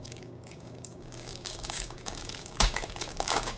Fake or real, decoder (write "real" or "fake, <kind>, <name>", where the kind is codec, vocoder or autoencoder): fake, codec, DAC